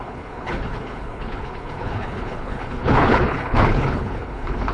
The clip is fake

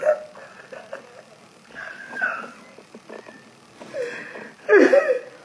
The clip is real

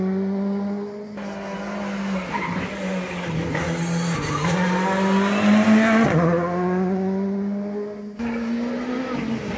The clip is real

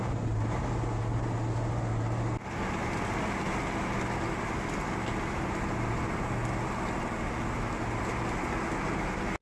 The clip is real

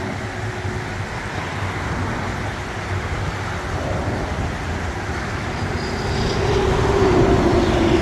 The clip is real